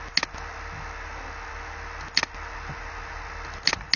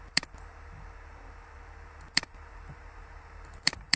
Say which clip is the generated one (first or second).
second